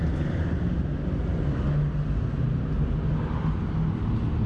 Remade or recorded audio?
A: recorded